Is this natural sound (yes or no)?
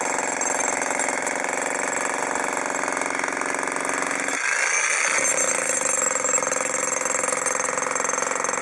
yes